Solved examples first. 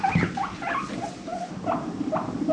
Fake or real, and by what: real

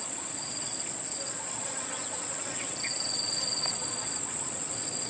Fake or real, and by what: fake, vocoder, Vocos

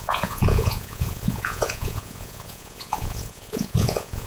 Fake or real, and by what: fake, vocoder, Vocos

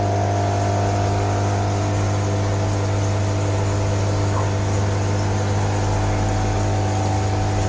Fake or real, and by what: real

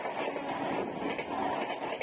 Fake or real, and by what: real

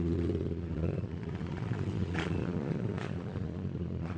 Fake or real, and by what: fake, vocoder, Vocos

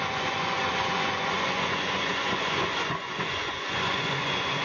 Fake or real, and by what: fake, vocoder, Vocos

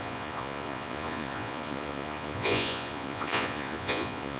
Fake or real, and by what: fake, vocoder, Vocos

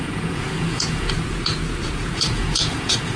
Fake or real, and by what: fake, vocoder, Vocos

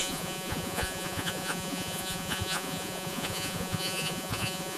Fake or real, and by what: fake, vocoder, Vocos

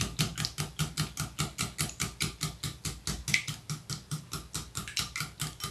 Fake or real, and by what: real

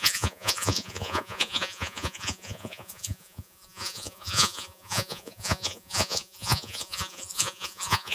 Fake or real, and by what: fake, vocoder, Vocos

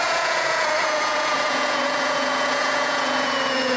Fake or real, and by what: fake, vocoder, Vocos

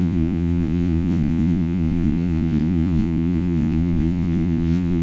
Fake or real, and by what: fake, vocoder, Vocos